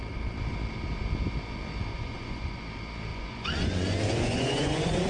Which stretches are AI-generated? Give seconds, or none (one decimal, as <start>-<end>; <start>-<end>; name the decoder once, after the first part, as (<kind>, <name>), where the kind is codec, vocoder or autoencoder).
1.9-2.6 (vocoder, Vocos); 3.1-5.1